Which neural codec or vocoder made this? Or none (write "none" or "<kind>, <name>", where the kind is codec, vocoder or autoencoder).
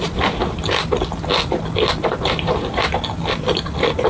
none